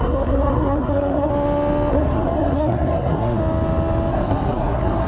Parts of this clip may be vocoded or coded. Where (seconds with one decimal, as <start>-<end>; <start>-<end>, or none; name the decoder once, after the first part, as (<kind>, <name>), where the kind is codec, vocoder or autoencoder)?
0.0-1.3 (codec, SNAC); 1.9-3.4; 4.1-5.1